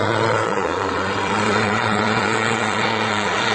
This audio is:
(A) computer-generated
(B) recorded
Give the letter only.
A